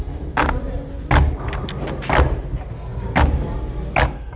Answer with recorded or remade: recorded